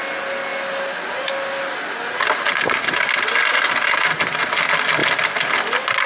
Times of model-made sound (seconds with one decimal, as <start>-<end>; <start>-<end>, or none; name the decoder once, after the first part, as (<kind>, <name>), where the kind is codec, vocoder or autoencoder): none